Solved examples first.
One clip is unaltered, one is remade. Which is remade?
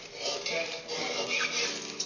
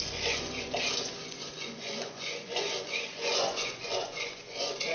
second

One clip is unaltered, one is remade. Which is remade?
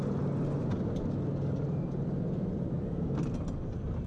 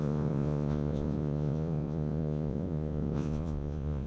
second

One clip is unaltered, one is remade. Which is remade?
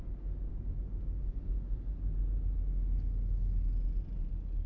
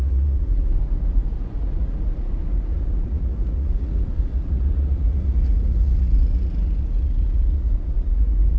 second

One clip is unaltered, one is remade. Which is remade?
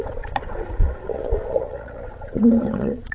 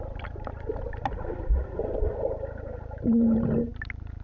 first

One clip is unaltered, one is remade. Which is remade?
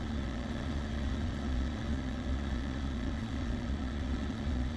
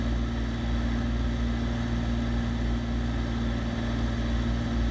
first